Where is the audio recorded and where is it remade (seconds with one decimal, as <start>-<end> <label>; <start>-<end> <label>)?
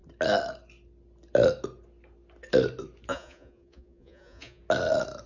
0.0-3.1 recorded; 3.1-4.6 remade; 4.6-5.3 recorded